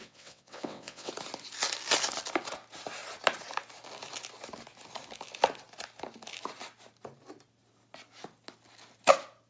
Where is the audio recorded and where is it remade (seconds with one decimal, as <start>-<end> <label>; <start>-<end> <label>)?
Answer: 0.0-1.1 remade; 1.1-9.5 recorded